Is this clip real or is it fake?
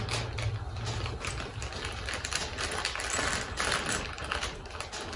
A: real